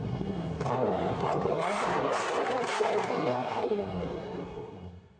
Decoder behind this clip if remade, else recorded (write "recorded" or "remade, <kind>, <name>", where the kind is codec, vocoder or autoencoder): remade, codec, SNAC